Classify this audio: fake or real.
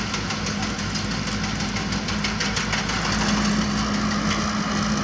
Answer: real